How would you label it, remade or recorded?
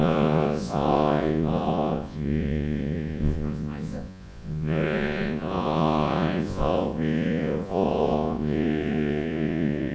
remade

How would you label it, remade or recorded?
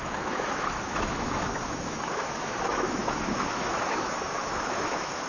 remade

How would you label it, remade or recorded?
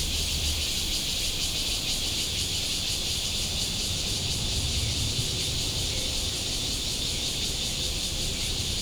remade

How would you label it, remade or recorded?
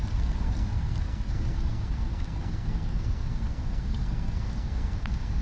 remade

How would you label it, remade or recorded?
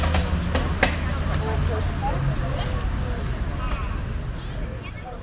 recorded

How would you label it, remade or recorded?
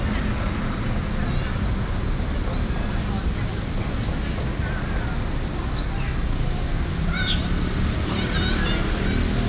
recorded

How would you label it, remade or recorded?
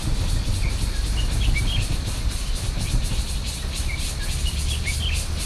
recorded